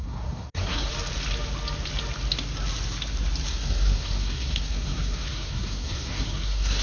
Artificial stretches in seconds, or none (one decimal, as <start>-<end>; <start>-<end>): 0.0-0.9; 3.5-6.8